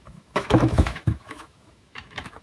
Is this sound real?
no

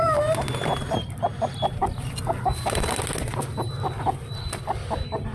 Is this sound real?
yes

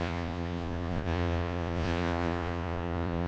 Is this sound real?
no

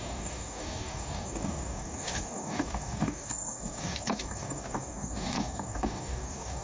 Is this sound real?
no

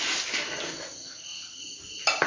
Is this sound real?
yes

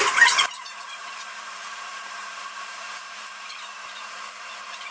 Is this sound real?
no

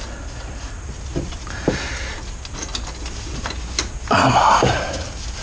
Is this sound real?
yes